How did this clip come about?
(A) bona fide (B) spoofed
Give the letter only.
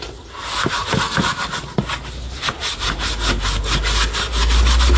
A